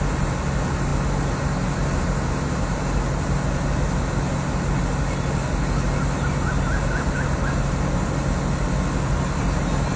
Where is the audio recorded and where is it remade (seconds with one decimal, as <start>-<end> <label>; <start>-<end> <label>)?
0.0-10.0 recorded